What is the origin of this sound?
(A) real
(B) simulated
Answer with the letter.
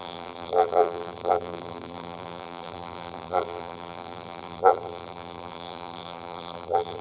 B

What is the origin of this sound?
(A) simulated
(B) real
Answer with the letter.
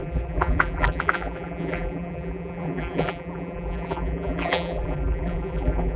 A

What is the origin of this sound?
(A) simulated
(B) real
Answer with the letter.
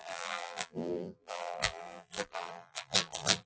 A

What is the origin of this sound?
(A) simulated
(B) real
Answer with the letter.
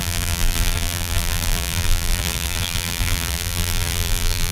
A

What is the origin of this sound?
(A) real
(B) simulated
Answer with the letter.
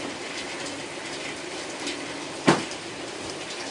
B